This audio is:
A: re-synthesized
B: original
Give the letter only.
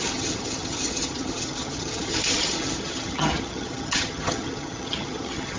A